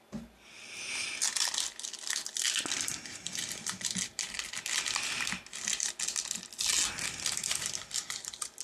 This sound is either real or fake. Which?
real